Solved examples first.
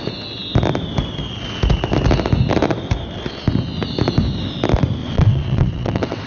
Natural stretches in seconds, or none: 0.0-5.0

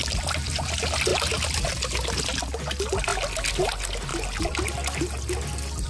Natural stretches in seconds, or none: 0.0-5.9